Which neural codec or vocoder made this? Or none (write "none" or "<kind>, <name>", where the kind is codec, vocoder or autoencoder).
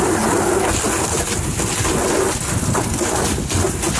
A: none